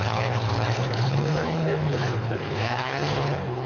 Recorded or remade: remade